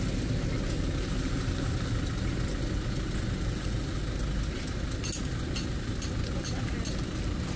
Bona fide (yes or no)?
yes